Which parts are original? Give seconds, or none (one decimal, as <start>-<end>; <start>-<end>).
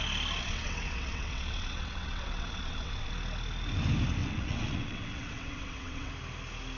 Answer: 0.0-0.4; 3.1-4.2; 6.1-6.8